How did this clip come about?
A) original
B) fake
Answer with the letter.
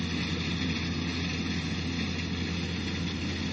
A